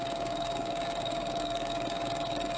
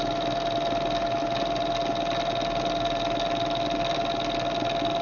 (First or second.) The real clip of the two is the second